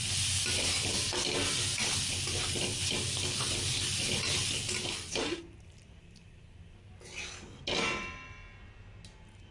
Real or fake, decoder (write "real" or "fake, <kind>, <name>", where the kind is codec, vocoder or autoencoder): real